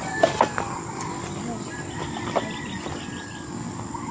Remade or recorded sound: recorded